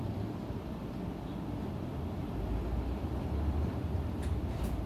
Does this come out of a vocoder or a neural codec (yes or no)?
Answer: yes